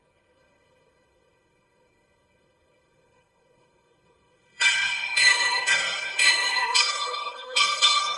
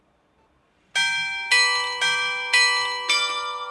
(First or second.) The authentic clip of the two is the second